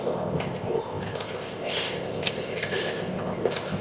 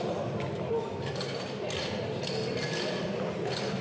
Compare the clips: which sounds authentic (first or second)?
second